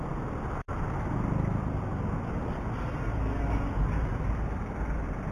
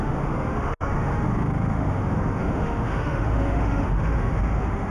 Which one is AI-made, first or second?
second